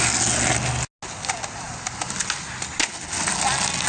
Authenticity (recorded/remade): recorded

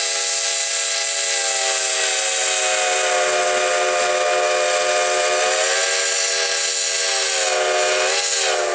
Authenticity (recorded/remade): recorded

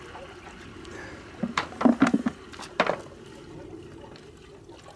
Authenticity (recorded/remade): recorded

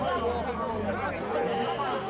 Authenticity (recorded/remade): recorded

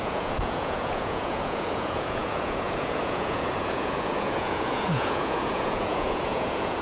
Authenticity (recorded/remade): remade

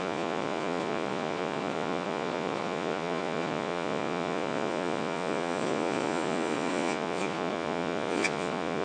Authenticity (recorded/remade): remade